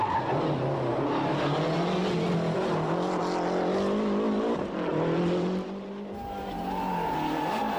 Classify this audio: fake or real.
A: real